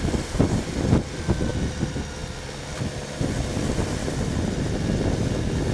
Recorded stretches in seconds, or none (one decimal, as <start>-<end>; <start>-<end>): 0.0-5.7